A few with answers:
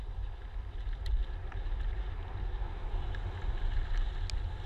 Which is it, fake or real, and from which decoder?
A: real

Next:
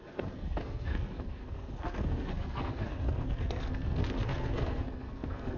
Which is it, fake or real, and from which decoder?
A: fake, codec, SNAC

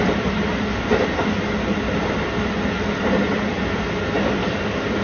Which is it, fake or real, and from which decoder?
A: real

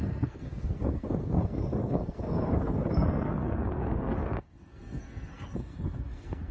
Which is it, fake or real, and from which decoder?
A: fake, codec, SNAC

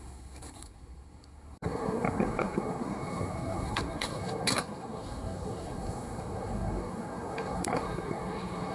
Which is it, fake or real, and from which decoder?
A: fake, codec, SNAC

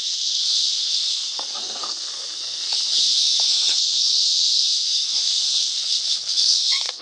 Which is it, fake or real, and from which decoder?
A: fake, codec, SNAC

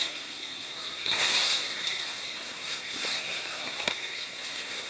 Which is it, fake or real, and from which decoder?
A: fake, codec, SNAC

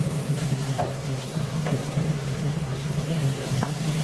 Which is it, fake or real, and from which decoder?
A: fake, codec, SNAC